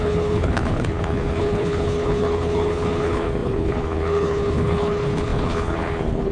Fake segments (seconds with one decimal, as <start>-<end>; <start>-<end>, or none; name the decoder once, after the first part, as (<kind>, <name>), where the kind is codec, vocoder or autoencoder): 0.0-6.3 (codec, HILCodec)